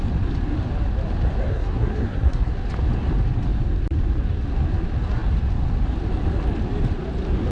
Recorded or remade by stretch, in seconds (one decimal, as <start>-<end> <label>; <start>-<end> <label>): 0.0-1.5 recorded; 1.5-2.5 remade; 2.5-7.5 recorded